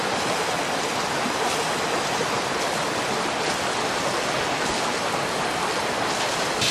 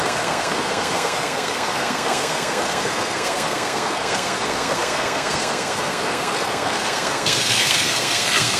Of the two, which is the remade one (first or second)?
second